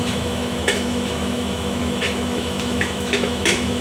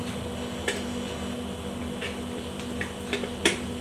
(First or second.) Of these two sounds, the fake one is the first